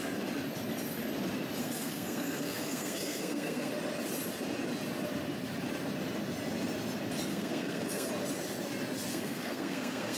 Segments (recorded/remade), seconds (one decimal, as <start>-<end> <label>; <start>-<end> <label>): 0.0-1.6 recorded; 1.6-3.7 remade; 3.7-7.3 recorded; 7.3-8.1 remade; 8.1-9.1 recorded; 9.1-10.2 remade